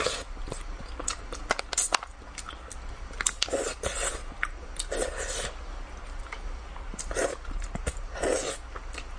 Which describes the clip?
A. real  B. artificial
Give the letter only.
A